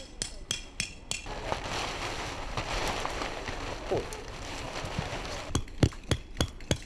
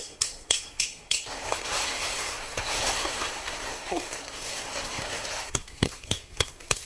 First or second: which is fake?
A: second